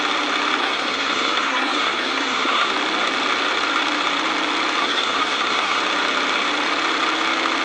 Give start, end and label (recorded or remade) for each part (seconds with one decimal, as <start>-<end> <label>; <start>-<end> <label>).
0.0-0.6 recorded; 0.6-2.7 remade; 2.7-4.8 recorded; 4.8-5.8 remade; 5.8-7.6 recorded